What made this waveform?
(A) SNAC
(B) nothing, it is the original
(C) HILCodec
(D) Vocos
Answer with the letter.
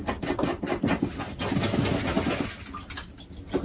B